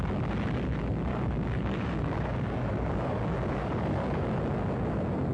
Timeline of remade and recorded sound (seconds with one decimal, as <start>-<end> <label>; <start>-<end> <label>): 0.0-1.1 recorded; 1.1-4.3 remade; 4.3-5.3 recorded

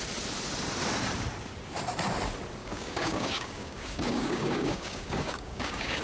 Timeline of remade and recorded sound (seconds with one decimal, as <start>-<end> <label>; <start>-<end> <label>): 0.0-2.6 recorded; 2.6-6.0 remade

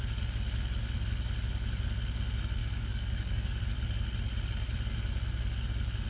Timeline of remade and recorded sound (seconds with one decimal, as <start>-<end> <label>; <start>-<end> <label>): 0.0-2.6 recorded; 2.6-3.7 remade; 3.7-6.1 recorded

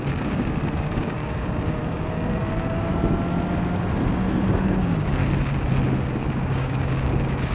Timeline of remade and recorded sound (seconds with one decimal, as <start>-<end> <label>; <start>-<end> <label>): 0.0-2.9 remade; 2.9-4.1 recorded; 4.1-5.2 remade; 5.2-6.1 recorded; 6.1-7.5 remade

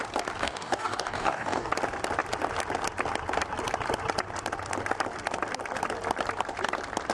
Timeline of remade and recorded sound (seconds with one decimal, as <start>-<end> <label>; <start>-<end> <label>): 0.0-0.4 recorded; 0.4-1.7 remade; 1.7-7.1 recorded

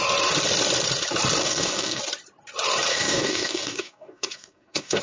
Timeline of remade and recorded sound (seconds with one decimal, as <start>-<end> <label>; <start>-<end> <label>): 0.0-1.4 recorded; 1.4-2.0 remade; 2.0-2.9 recorded; 2.9-5.0 remade

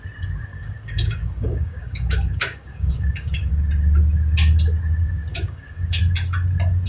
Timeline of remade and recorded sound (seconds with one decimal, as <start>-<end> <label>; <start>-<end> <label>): 0.0-0.5 recorded; 0.5-3.5 remade; 3.5-5.3 recorded; 5.3-6.0 remade; 6.0-6.9 recorded